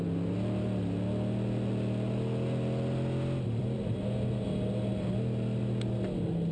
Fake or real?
real